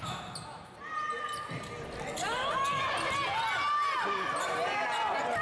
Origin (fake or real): real